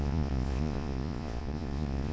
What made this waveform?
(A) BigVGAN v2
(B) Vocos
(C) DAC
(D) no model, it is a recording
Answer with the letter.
B